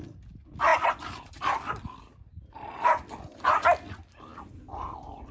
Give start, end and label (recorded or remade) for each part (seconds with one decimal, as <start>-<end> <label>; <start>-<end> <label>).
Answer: 0.0-5.3 recorded